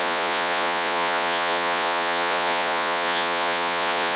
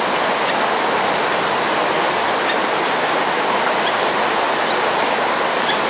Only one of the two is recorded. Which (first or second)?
second